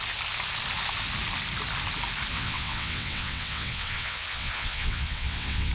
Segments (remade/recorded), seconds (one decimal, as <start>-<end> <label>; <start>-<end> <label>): 0.0-2.3 recorded; 2.3-5.7 remade